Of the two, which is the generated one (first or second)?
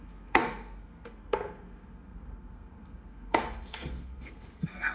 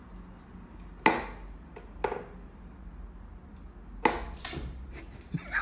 first